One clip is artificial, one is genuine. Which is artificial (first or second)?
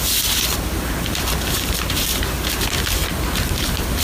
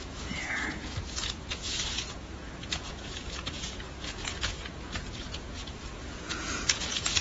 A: second